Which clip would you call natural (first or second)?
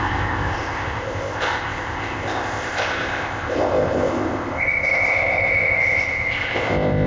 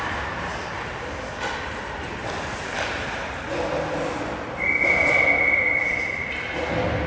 second